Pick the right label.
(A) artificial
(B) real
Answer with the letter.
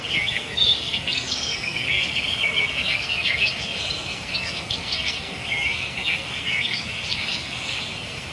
A